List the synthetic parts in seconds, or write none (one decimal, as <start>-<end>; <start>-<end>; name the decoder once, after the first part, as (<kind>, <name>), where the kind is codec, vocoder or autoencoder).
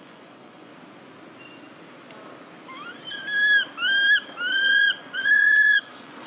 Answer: 0.0-0.7 (vocoder, Vocos); 4.5-6.3